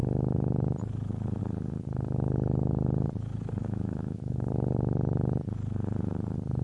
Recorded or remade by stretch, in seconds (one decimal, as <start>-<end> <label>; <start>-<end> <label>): 0.0-3.6 recorded; 3.6-4.5 remade; 4.5-6.6 recorded